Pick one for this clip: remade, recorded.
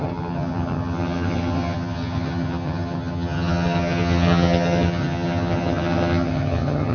remade